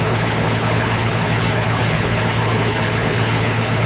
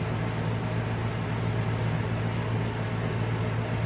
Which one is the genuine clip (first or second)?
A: second